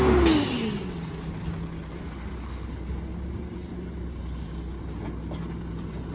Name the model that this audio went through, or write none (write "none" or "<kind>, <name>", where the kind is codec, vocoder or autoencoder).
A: none